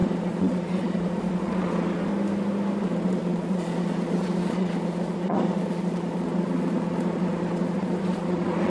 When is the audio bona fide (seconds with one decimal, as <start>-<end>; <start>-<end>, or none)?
2.1-2.8

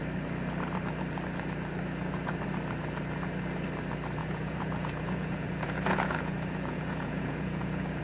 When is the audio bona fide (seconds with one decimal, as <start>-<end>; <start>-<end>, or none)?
0.0-4.2

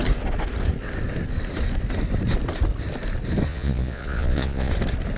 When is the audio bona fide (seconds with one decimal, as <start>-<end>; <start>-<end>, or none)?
0.0-3.5; 4.7-5.2

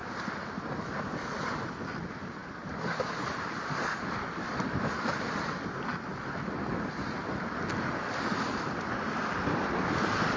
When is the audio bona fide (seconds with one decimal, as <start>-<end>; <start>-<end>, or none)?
0.0-10.4